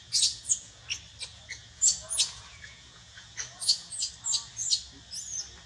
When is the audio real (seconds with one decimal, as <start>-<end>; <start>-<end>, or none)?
0.8-1.3; 4.1-5.7